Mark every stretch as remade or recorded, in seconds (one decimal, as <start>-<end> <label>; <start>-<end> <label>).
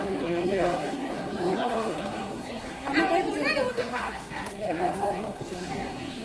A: 0.0-2.9 remade; 2.9-3.7 recorded; 3.7-6.2 remade